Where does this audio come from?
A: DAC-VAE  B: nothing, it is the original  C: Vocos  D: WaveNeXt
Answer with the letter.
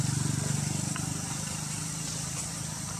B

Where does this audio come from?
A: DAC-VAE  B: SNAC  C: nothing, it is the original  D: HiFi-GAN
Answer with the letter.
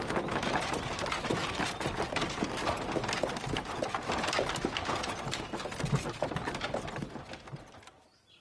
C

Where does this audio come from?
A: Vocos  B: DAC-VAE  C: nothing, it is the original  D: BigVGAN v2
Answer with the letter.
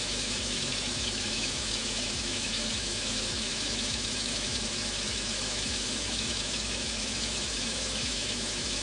B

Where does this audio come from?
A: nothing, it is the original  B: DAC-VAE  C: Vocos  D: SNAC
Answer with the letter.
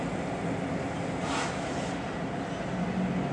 A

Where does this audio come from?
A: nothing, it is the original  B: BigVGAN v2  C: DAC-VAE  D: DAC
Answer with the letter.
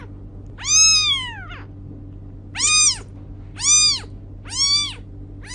A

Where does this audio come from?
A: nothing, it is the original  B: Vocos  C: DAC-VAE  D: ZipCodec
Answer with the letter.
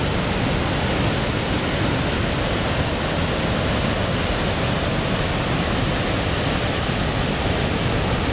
A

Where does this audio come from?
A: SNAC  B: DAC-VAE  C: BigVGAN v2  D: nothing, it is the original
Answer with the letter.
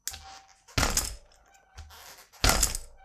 D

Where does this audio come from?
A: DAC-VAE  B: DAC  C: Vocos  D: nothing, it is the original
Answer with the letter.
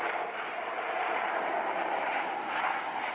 D